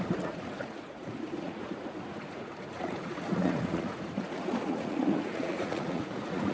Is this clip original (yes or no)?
no